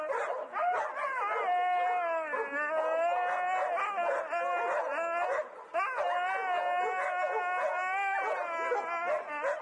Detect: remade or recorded recorded